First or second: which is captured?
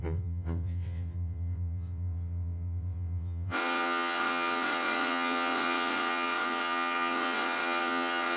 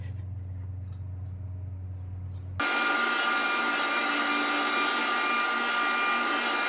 second